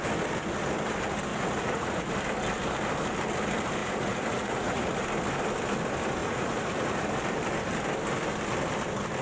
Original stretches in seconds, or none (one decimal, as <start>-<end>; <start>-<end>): 0.0-1.3; 2.1-3.8; 5.0-6.2; 7.1-9.2